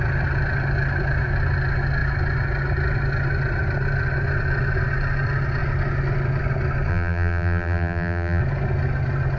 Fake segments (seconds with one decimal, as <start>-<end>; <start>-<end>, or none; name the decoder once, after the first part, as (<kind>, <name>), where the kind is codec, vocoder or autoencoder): 6.9-8.4 (vocoder, BigVGAN v2)